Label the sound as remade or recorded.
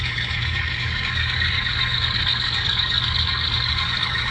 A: remade